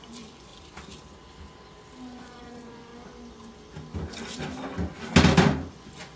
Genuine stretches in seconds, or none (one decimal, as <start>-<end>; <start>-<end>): 0.5-2.1; 2.9-5.7